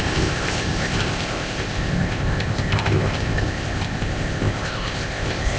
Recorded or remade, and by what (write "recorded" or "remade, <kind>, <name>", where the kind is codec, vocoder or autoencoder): remade, codec, ZipCodec